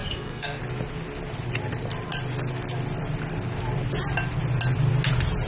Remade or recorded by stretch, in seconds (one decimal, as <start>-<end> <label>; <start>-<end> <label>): 0.0-0.6 remade; 0.6-5.5 recorded